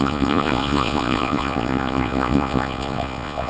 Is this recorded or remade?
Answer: remade